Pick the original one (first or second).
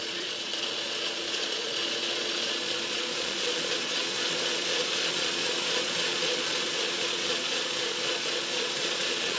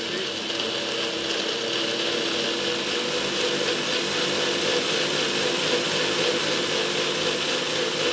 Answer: second